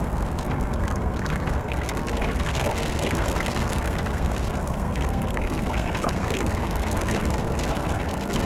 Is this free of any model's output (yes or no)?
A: no